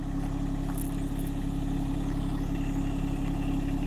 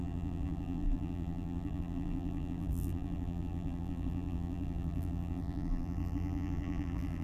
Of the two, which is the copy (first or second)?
second